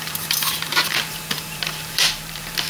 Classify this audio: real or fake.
fake